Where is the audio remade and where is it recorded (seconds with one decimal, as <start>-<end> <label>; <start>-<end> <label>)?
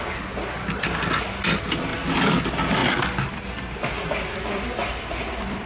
0.0-5.7 recorded